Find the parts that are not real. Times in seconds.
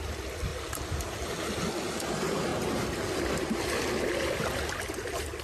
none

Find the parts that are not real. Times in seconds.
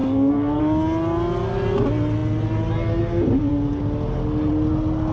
0.0-0.6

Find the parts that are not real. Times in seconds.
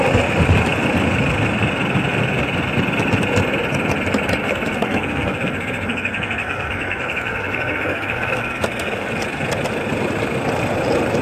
4.4-9.1